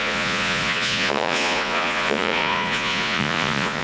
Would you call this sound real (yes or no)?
no